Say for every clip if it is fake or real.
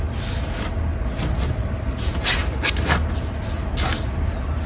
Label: real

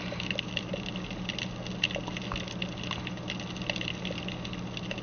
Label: real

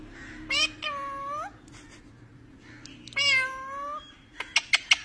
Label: real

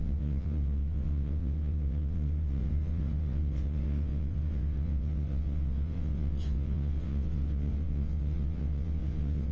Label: fake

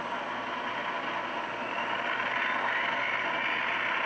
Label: real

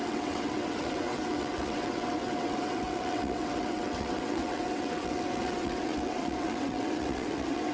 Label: fake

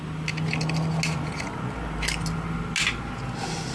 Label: real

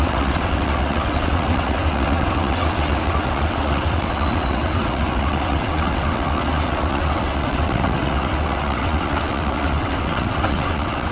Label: fake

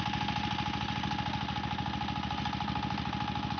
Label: real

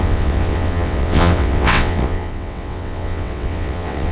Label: fake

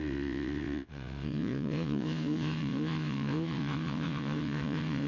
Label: fake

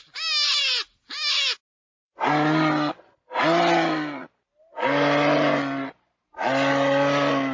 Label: real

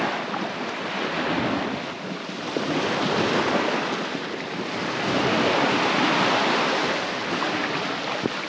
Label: real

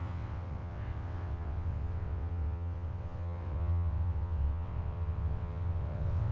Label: fake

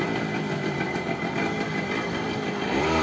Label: real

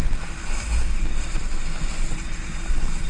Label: real